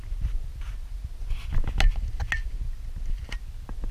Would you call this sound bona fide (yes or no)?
yes